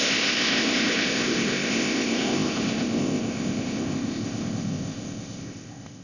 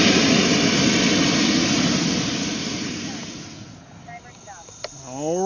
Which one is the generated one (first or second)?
first